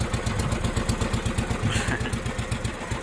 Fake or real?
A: real